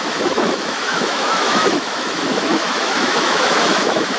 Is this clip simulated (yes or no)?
yes